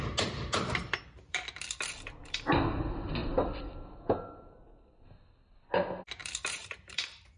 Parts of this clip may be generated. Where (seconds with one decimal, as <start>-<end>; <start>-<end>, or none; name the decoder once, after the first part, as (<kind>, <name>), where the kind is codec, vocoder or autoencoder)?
6.2-7.4 (vocoder, BigVGAN v2)